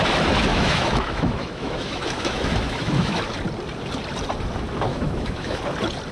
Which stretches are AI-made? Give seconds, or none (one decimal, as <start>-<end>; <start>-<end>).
0.5-3.2; 4.9-5.6